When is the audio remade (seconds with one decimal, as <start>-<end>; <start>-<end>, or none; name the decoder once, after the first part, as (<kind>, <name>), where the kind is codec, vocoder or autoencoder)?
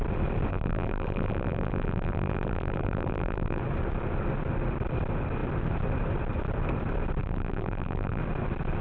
0.5-3.6 (vocoder, BigVGAN v2); 7.2-8.2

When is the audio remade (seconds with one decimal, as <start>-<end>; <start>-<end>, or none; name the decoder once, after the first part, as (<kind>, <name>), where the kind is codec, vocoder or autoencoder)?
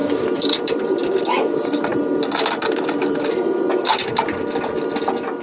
0.0-1.9 (vocoder, BigVGAN v2)